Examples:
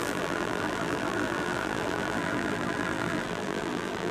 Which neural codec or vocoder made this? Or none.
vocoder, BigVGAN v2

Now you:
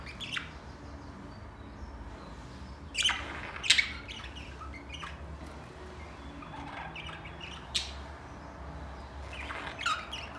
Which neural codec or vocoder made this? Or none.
none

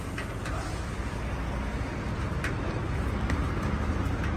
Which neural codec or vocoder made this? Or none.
none